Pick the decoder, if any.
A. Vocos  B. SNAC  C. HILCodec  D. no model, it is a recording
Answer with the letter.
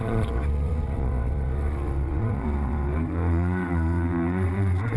A